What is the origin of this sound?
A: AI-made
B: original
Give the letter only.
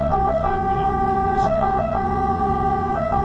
A